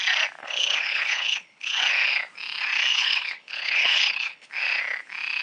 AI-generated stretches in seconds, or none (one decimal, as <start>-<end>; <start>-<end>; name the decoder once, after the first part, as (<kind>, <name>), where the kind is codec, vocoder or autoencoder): 0.4-1.8 (codec, HILCodec); 2.9-4.5